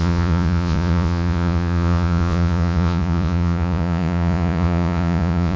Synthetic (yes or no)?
yes